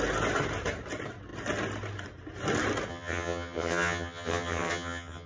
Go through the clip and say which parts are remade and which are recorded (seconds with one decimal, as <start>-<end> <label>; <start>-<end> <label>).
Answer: 0.0-2.9 recorded; 2.9-5.3 remade